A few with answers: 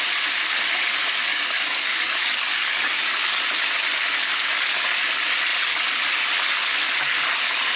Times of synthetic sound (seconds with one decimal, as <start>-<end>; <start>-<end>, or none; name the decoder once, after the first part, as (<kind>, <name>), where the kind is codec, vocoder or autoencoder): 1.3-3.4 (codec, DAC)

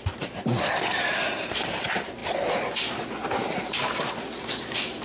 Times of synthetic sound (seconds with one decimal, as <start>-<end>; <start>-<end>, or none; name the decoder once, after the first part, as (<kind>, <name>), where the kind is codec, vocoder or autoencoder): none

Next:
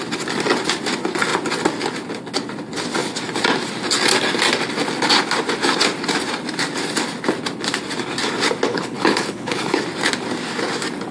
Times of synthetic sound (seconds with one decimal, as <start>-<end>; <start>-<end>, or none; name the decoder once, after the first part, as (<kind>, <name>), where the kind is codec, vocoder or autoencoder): 8.7-9.8 (codec, HILCodec)

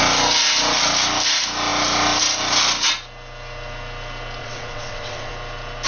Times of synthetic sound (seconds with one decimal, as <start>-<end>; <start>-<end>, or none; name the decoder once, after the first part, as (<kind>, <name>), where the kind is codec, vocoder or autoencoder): 4.4-5.3 (vocoder, WaveNeXt)